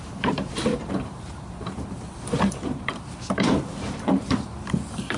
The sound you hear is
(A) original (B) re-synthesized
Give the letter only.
B